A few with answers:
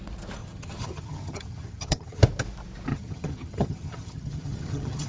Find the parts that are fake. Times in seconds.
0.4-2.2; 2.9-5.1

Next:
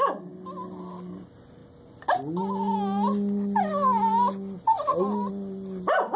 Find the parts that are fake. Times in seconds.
none